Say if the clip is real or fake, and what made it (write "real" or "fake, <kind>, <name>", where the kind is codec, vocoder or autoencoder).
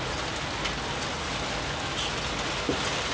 real